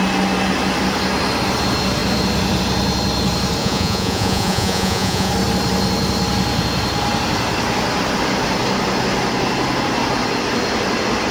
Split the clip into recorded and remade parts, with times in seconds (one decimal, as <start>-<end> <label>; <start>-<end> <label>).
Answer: 0.0-3.6 recorded; 3.6-5.3 remade; 5.3-11.3 recorded